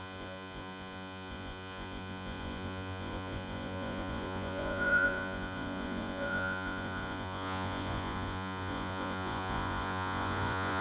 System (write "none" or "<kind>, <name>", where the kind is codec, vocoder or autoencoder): vocoder, Vocos